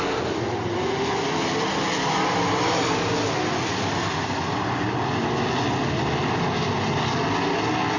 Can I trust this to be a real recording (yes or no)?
yes